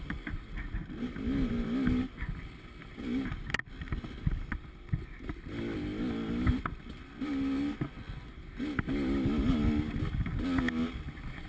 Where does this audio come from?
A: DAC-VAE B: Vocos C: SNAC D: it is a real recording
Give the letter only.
D